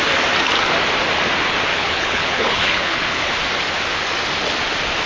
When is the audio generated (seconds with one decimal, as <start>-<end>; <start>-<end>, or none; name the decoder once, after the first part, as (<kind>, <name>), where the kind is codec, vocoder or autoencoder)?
1.7-3.3 (codec, HILCodec)